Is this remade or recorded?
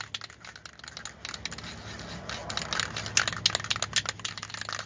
recorded